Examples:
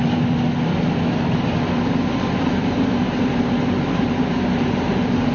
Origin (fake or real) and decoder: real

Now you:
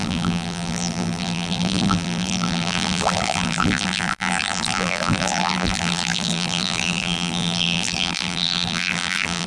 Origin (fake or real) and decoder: fake, vocoder, BigVGAN v2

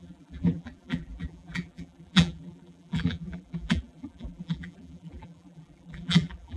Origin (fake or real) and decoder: fake, vocoder, BigVGAN v2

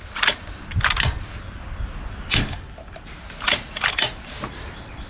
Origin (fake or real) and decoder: real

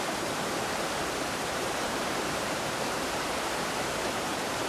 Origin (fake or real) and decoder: fake, vocoder, BigVGAN v2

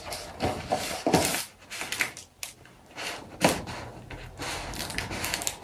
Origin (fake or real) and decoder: real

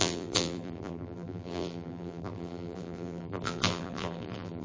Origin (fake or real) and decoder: fake, vocoder, BigVGAN v2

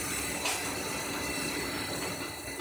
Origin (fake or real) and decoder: real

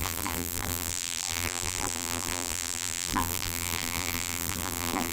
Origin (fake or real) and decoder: fake, vocoder, BigVGAN v2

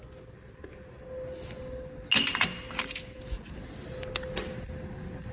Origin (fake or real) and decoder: real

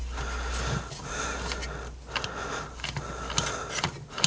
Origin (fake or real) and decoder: real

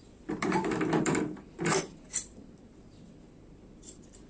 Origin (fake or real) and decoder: fake, vocoder, BigVGAN v2